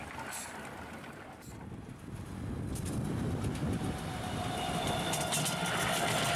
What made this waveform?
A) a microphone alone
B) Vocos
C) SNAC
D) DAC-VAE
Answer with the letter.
A